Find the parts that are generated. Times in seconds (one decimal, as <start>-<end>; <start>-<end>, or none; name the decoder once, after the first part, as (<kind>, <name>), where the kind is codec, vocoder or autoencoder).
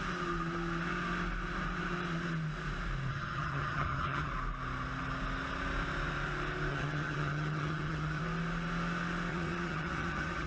3.1-4.3 (vocoder, HiFi-GAN); 6.7-8.2; 9.3-10.5